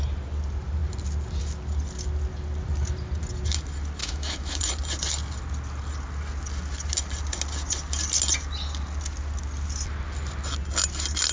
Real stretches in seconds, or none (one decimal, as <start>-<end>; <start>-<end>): 0.0-4.0; 4.6-11.3